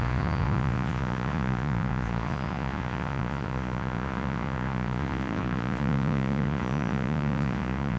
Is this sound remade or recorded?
remade